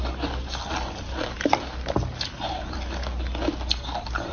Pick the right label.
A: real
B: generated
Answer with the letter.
A